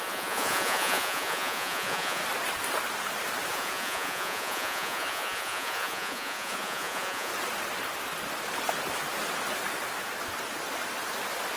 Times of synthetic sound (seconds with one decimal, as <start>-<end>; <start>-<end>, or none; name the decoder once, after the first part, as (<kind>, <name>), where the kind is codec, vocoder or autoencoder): 0.0-2.2 (vocoder, Vocos); 3.5-7.3